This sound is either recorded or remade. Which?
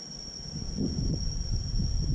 recorded